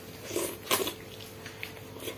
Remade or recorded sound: recorded